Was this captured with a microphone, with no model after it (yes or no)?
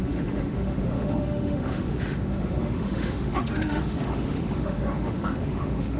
no